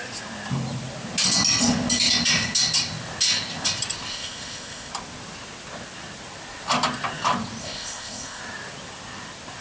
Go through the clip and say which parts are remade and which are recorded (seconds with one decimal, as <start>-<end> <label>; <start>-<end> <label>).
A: 0.0-4.1 recorded; 4.1-4.9 remade; 4.9-7.6 recorded; 7.6-8.4 remade; 8.4-9.6 recorded